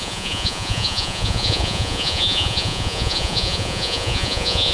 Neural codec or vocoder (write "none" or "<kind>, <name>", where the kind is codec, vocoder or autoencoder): vocoder, Vocos